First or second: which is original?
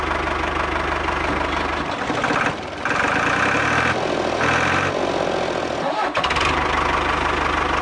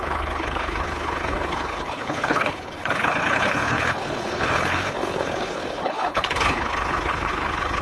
first